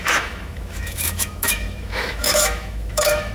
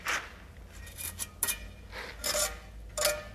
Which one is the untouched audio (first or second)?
second